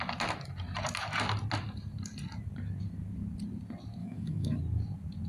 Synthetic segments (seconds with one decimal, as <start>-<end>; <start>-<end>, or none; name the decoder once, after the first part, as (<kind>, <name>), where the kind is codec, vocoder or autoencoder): 4.0-4.6 (autoencoder, DAC-VAE)